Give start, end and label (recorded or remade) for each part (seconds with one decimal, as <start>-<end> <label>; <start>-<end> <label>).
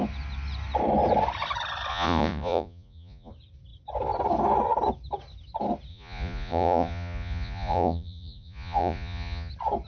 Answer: 0.0-1.9 recorded; 1.9-3.3 remade; 3.3-5.9 recorded; 5.9-9.5 remade; 9.5-9.9 recorded